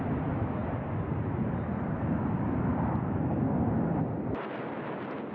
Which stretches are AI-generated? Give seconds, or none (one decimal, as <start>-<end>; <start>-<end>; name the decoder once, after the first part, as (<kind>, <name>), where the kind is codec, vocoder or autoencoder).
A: none